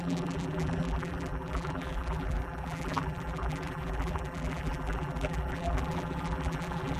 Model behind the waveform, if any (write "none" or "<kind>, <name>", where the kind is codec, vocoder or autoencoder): vocoder, BigVGAN v2